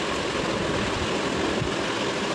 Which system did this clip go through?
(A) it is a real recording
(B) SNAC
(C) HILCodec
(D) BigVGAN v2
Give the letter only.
A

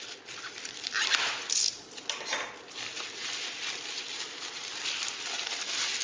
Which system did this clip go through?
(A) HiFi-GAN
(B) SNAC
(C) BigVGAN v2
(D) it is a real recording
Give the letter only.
C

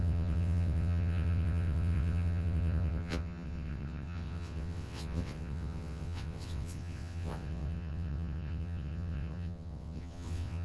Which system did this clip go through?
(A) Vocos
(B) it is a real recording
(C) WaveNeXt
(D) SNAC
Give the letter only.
C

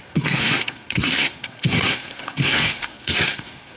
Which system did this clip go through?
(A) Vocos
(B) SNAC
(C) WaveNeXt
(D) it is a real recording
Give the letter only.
B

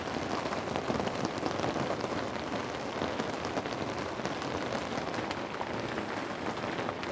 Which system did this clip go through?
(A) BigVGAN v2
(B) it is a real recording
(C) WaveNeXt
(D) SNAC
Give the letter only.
B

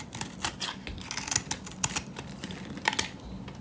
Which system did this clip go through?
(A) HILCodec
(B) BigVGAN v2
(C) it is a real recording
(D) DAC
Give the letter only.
C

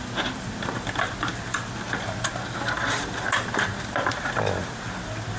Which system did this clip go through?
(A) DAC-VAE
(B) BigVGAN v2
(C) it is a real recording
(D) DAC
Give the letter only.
C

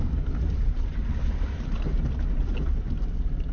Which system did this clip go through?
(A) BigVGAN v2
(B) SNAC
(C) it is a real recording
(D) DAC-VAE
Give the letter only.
C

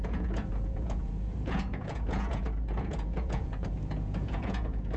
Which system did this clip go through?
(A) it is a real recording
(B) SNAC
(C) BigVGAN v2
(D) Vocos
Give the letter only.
D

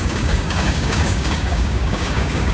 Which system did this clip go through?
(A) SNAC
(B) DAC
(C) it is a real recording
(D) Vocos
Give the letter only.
B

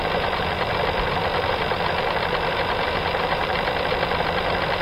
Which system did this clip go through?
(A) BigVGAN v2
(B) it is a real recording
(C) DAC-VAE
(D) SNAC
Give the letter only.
A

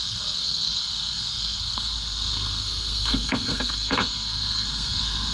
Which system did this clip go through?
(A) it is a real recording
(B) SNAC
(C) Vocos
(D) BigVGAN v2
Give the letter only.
B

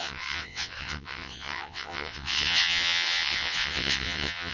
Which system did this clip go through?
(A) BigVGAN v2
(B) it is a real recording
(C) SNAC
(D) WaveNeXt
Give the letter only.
D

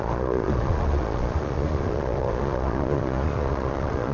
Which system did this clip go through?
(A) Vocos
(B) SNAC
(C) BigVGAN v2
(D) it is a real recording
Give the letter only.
A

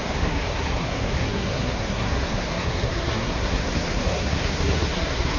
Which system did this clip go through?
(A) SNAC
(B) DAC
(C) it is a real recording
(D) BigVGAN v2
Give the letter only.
A